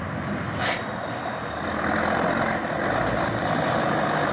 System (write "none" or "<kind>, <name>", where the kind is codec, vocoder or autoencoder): none